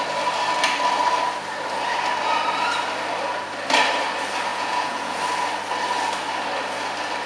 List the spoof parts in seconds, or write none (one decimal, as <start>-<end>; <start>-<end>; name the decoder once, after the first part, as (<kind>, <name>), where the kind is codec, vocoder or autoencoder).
4.5-5.2 (vocoder, Vocos)